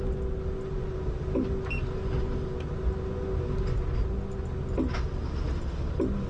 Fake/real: real